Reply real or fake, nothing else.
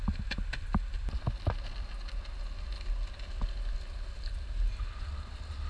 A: real